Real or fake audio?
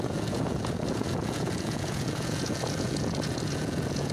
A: fake